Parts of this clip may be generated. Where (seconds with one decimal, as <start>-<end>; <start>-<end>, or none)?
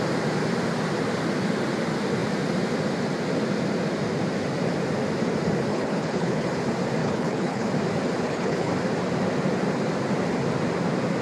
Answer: 5.7-6.5; 7.0-7.7; 8.2-8.7